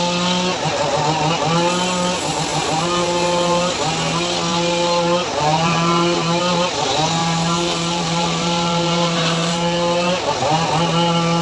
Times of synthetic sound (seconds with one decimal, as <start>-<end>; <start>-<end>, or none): 2.5-3.7; 4.5-6.4; 7.2-10.1